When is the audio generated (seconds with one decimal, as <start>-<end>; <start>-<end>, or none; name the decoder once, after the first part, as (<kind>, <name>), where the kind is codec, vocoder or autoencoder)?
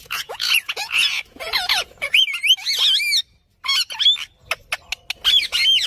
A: 0.0-2.3 (vocoder, Vocos)